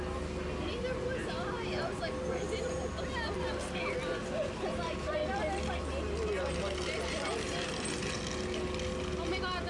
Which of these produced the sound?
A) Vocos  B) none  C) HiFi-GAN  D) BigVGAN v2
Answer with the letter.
B